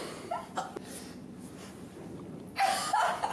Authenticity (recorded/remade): recorded